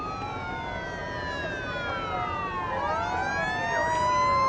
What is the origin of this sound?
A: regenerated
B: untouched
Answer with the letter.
B